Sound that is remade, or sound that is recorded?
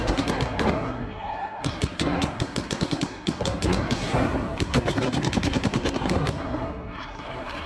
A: remade